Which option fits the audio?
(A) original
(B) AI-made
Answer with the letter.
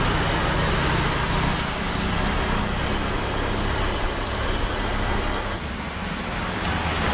A